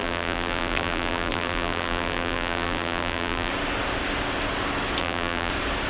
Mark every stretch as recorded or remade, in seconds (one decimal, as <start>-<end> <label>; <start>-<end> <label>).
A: 0.0-3.5 remade; 3.5-5.0 recorded; 5.0-5.5 remade; 5.5-5.9 recorded